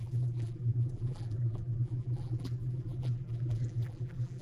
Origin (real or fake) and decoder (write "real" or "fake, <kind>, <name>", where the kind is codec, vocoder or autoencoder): fake, vocoder, BigVGAN v2